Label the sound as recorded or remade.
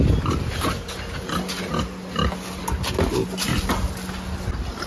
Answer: recorded